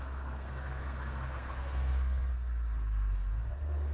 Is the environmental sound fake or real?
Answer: fake